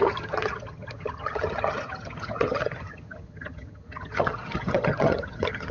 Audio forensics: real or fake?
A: fake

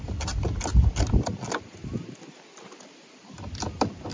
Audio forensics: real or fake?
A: real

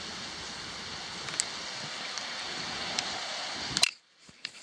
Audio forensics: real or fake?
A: real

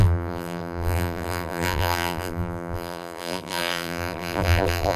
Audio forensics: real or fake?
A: fake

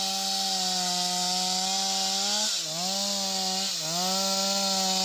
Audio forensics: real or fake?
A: real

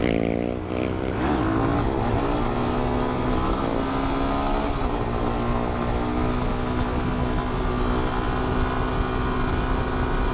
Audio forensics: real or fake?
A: real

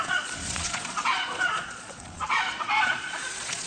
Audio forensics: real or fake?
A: fake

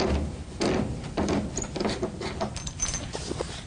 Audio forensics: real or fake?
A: real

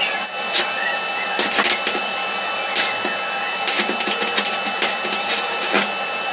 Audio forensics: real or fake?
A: real